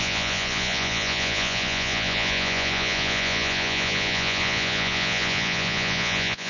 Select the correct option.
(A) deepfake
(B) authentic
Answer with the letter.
A